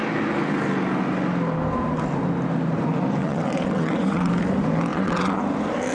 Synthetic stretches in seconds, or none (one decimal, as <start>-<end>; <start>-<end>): 3.2-4.3; 4.9-5.4

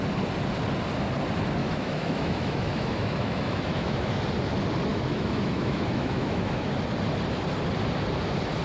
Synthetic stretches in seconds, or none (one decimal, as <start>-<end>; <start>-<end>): 1.6-4.2; 4.9-6.7

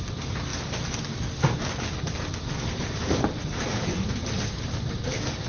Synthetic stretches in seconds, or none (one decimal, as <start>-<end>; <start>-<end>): none